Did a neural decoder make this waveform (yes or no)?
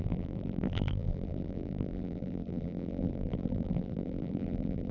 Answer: yes